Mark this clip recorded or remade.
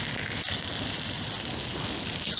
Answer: recorded